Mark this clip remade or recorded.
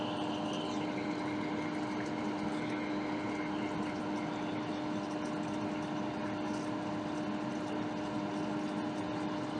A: recorded